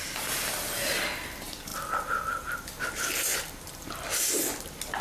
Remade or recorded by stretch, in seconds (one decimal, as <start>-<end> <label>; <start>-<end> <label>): 0.0-5.0 recorded